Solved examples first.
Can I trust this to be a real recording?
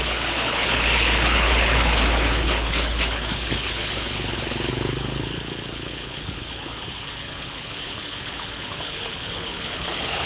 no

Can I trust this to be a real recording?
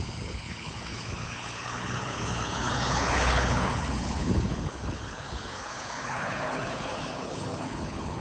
no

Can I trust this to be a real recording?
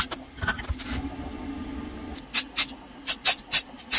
yes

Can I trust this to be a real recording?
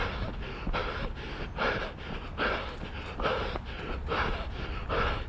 yes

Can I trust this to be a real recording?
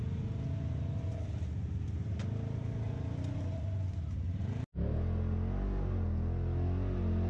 yes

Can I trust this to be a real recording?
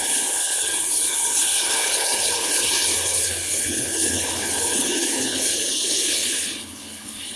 no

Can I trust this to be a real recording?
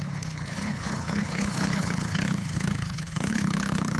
no